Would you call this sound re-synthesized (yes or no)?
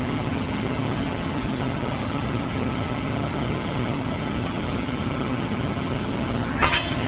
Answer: yes